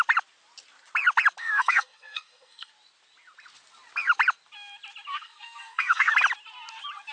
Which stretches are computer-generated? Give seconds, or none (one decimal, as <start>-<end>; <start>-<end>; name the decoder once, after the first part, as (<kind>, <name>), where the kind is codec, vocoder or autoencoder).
1.4-2.7 (codec, SNAC); 5.1-6.1